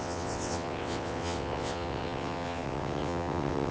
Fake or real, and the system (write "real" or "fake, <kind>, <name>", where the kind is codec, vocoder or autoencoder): fake, vocoder, WaveNeXt